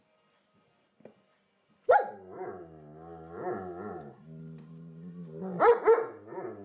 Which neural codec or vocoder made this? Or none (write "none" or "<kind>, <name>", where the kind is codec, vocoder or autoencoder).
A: none